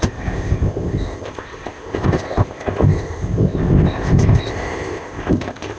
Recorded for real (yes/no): no